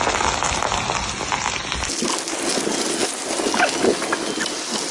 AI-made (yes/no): no